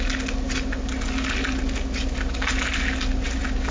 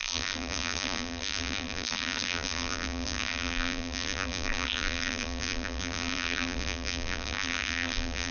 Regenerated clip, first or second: second